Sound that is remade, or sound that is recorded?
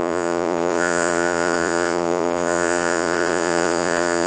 remade